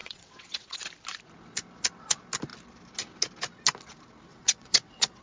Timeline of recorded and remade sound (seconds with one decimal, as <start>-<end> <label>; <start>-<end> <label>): 0.0-0.8 remade; 0.8-4.3 recorded; 4.3-5.2 remade